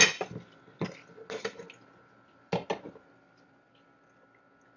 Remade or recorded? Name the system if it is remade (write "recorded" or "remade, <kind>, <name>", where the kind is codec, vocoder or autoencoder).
recorded